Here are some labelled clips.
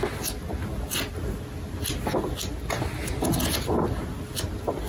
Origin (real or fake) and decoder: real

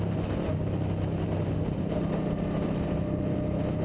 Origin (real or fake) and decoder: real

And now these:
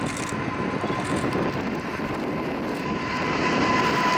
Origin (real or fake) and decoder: real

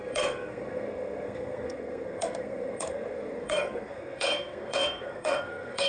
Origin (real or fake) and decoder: fake, codec, SNAC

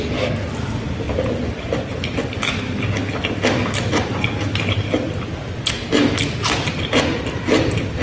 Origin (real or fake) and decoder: real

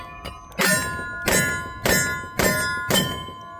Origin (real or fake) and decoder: real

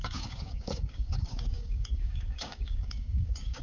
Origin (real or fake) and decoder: fake, codec, DAC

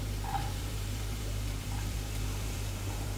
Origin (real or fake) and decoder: fake, vocoder, BigVGAN v2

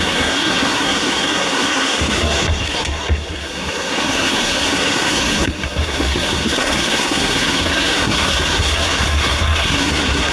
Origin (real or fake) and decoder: fake, codec, SNAC